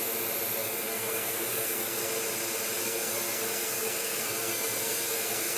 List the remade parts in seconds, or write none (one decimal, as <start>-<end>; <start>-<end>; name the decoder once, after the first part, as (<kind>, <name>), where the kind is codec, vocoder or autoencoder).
0.6-2.1 (codec, SNAC); 2.8-5.6